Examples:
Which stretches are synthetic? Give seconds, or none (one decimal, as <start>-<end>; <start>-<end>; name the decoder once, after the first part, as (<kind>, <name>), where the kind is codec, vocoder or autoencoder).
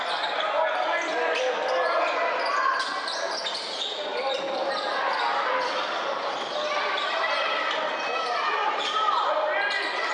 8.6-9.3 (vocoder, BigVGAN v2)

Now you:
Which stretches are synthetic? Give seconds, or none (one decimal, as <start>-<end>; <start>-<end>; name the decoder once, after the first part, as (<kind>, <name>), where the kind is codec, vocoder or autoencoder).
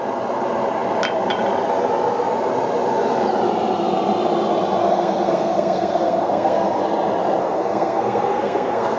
4.8-6.8 (codec, SNAC); 7.4-9.0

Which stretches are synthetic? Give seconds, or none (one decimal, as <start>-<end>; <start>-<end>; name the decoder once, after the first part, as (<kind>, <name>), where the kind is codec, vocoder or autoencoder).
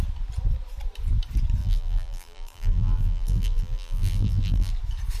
1.6-4.7 (vocoder, BigVGAN v2)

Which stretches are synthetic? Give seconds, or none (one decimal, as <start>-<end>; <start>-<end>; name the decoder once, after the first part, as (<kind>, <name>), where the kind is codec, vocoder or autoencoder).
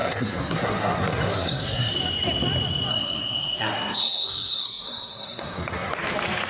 0.0-1.9 (codec, SNAC); 2.9-5.9